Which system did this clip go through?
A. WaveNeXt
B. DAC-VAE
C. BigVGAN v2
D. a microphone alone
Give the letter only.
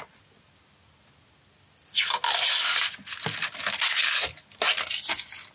D